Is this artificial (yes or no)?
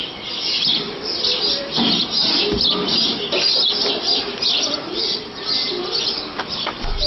no